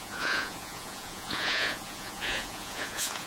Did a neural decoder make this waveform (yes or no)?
yes